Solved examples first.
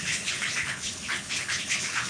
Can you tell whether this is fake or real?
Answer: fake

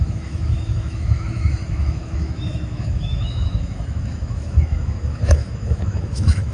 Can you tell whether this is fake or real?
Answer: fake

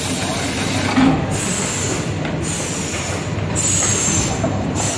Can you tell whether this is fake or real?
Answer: real